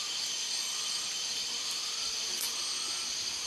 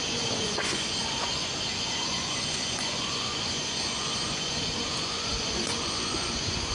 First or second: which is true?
first